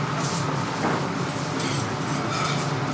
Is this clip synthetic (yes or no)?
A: no